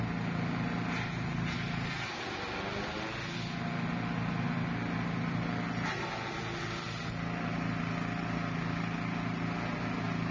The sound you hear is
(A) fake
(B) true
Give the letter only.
B